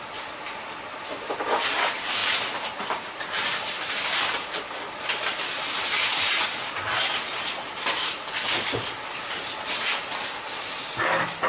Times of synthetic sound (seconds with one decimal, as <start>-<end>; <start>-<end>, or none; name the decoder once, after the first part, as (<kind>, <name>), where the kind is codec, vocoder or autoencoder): none